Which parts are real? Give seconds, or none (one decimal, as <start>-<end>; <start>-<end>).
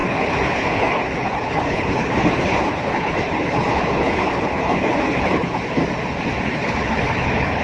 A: 5.8-6.4